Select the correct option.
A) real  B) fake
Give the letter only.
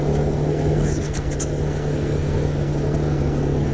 B